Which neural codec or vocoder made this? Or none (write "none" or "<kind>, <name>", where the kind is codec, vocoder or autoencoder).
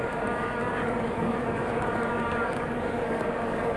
codec, DAC